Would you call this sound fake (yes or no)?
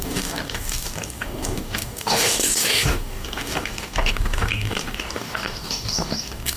yes